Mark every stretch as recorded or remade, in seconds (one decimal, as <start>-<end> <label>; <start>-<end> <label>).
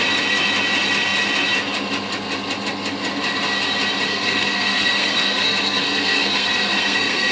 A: 0.0-4.1 recorded; 4.1-7.3 remade